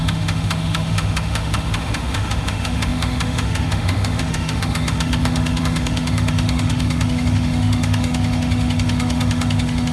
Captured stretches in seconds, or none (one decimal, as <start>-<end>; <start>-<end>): none